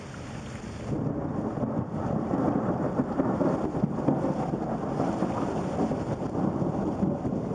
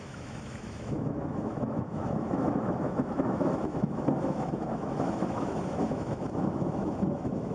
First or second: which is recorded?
first